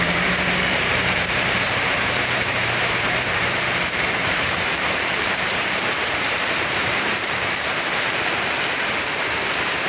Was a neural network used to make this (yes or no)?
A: yes